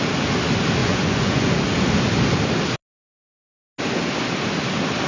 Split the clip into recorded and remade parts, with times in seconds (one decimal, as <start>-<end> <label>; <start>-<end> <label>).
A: 0.0-0.8 recorded; 0.8-1.5 remade; 1.5-5.1 recorded